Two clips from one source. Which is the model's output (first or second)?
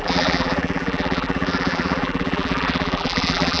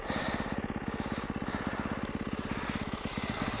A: first